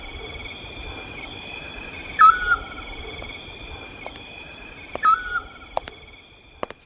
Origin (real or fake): fake